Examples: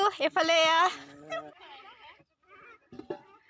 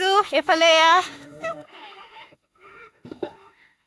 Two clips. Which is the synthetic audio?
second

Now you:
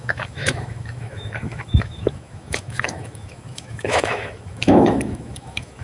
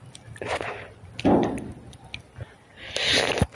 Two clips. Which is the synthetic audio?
first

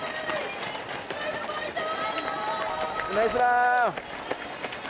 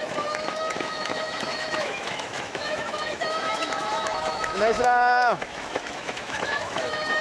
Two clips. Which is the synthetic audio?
second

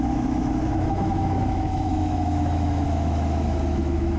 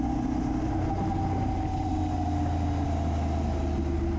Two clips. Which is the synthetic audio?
first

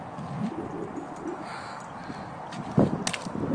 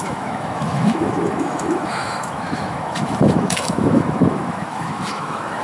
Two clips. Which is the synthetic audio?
second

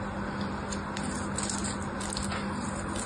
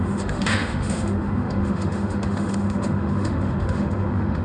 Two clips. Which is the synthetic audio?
second